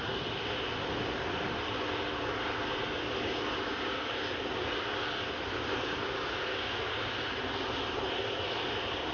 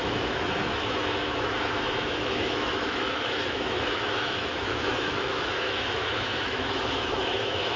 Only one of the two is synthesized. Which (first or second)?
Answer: second